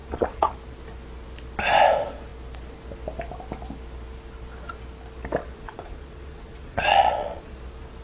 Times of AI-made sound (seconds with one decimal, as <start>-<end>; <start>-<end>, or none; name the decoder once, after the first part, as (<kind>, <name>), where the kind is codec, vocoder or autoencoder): 0.0-0.5 (vocoder, Vocos); 5.4-7.6